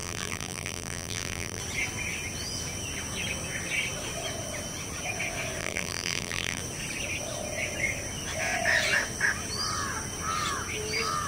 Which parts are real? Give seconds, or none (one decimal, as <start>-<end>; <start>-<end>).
1.6-5.6; 6.6-11.3